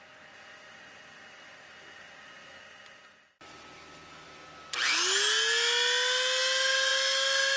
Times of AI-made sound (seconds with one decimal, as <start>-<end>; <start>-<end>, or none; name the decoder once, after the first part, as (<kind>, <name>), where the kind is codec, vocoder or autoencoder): none